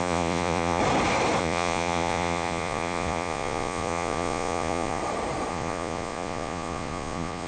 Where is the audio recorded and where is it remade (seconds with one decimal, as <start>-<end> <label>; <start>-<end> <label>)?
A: 0.0-0.8 remade; 0.8-1.4 recorded; 1.4-5.0 remade; 5.0-5.5 recorded; 5.5-7.5 remade